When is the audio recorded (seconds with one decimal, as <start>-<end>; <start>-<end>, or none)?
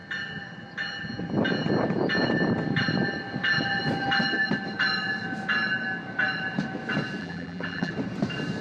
0.0-7.2; 7.9-8.6